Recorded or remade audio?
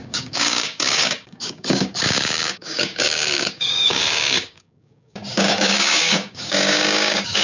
remade